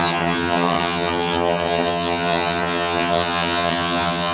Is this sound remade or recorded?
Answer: remade